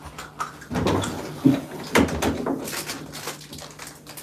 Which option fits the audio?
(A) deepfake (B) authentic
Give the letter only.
B